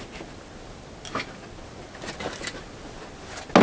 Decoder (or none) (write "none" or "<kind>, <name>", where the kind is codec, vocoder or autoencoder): none